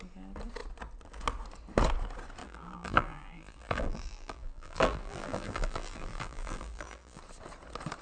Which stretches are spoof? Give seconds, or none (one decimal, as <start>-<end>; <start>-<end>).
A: 2.4-7.2